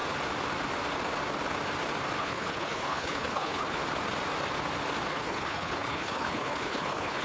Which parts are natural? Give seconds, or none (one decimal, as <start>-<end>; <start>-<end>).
0.0-2.2; 3.8-5.1